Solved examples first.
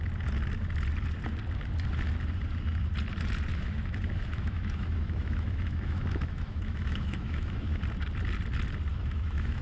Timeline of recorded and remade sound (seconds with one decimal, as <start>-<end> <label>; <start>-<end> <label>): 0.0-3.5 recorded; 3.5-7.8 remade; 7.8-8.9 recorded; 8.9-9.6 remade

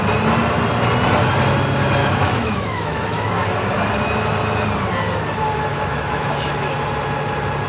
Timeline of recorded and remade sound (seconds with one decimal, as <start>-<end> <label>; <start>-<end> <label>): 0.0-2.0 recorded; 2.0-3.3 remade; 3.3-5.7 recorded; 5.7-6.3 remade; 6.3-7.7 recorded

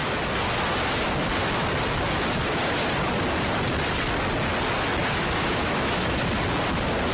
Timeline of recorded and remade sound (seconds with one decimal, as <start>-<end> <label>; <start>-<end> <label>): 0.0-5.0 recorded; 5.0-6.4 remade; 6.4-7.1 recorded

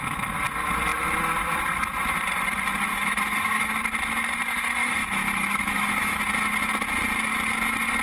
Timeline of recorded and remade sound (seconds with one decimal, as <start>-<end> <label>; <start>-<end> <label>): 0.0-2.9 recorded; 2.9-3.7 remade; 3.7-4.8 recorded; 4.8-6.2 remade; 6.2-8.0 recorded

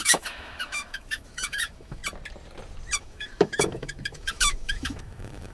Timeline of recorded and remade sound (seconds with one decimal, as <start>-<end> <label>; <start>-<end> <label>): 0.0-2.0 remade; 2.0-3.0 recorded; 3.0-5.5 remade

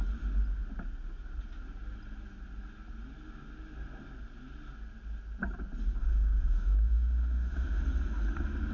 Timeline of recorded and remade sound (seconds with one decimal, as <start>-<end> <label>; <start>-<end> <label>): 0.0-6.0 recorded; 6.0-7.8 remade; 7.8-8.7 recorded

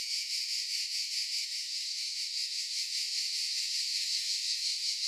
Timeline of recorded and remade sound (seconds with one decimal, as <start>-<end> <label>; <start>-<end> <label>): 0.0-5.1 remade